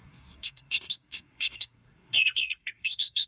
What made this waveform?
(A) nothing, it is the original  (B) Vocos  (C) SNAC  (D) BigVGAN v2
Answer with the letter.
C